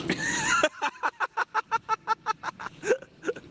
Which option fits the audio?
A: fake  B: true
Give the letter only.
B